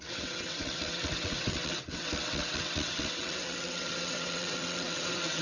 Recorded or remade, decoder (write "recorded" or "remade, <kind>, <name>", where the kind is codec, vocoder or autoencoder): remade, vocoder, WaveNeXt